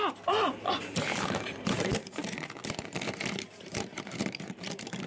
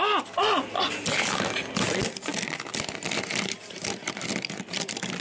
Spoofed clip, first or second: first